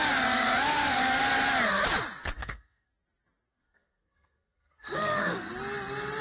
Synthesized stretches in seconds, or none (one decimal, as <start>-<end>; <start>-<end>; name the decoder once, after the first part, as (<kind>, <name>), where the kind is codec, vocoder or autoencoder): 2.4-2.9 (codec, SNAC); 3.5-5.5